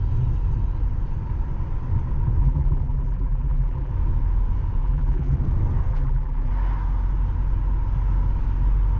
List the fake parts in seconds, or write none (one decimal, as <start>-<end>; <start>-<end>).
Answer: 2.4-3.9; 4.8-5.4; 5.9-6.5